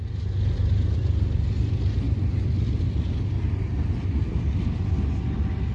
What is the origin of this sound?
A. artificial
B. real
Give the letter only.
B